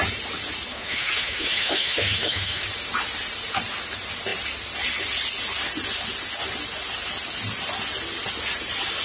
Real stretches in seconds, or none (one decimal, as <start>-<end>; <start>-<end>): 0.0-0.7; 2.6-9.0